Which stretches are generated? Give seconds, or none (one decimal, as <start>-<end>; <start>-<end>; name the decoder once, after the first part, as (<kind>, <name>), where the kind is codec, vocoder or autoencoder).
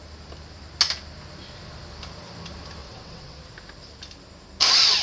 2.8-3.4 (vocoder, WaveNeXt)